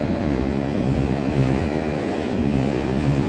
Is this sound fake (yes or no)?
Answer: yes